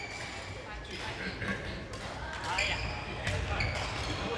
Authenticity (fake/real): real